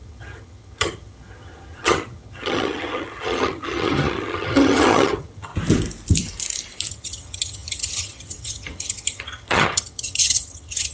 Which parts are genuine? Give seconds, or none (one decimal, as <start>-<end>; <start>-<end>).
5.5-6.9